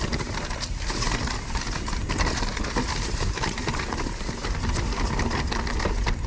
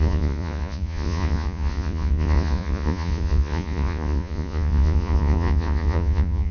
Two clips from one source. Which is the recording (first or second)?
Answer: first